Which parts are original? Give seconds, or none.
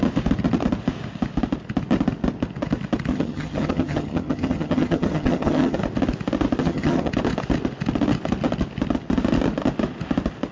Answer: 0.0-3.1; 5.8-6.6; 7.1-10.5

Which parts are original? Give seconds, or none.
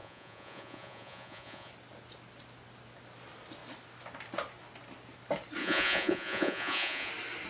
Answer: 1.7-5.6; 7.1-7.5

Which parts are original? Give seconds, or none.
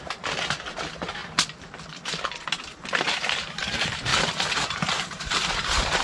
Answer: 1.2-2.6; 4.1-4.9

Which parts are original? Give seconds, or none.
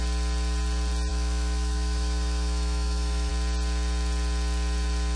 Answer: 0.0-1.1; 3.3-5.2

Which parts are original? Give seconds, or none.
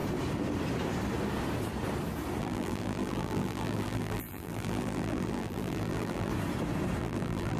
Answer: 0.0-2.4; 6.3-7.0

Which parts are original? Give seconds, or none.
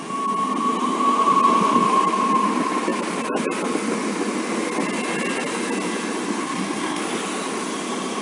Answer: 0.0-6.4; 7.0-8.2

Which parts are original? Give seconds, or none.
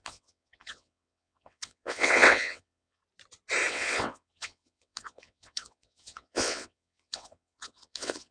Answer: 3.0-3.7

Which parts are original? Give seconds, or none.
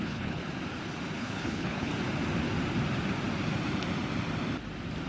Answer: 0.4-1.2; 1.9-5.1